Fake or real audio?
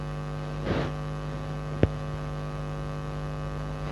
real